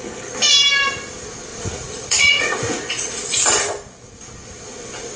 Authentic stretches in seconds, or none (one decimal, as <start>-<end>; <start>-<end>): 0.0-1.5; 3.2-5.2